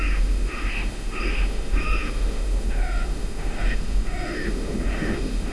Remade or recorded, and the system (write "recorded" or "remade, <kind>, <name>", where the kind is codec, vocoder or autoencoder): remade, autoencoder, DAC-VAE